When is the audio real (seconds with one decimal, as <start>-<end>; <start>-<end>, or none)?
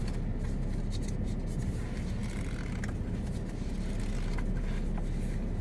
0.0-5.6